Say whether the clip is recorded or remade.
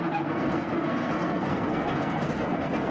remade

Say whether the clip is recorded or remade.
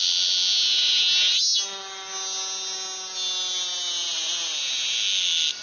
recorded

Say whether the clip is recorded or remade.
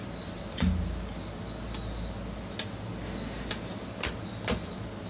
recorded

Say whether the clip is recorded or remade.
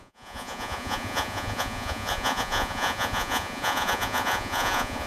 remade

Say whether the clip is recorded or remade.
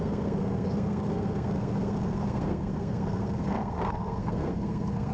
remade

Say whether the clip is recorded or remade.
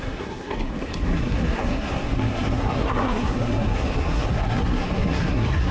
remade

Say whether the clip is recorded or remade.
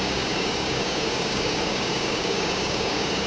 remade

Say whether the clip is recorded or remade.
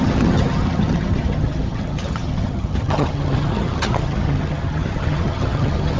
remade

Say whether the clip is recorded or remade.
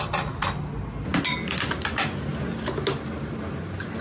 recorded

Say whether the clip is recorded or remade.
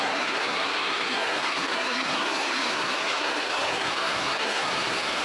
remade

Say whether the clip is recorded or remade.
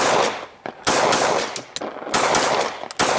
recorded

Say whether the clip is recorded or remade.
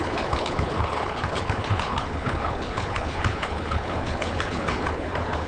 remade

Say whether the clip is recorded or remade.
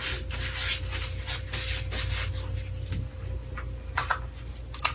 recorded